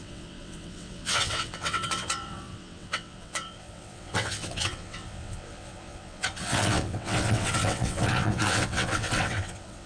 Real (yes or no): no